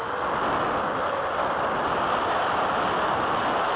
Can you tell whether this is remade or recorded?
recorded